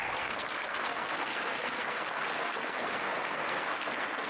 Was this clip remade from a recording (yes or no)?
yes